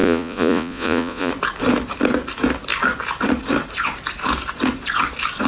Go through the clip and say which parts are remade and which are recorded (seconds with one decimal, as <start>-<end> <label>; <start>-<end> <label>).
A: 0.0-1.3 remade; 1.3-5.5 recorded